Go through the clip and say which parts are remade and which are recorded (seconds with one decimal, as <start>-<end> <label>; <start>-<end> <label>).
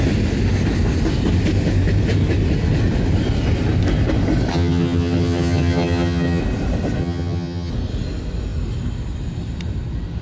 0.0-4.5 recorded; 4.5-6.4 remade; 6.4-7.0 recorded; 7.0-7.7 remade; 7.7-10.2 recorded